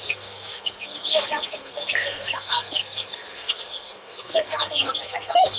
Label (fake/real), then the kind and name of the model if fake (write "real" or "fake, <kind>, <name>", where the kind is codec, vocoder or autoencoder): fake, codec, SNAC